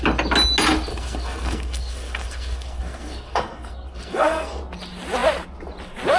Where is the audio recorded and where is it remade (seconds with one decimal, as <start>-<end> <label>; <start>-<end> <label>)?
0.0-0.9 recorded; 0.9-4.6 remade; 4.6-6.2 recorded